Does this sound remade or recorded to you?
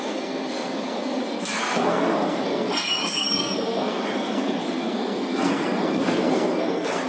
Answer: remade